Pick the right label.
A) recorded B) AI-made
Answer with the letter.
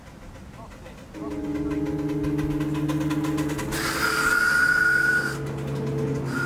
A